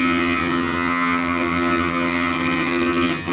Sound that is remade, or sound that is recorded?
remade